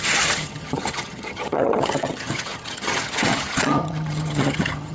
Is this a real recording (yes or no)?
no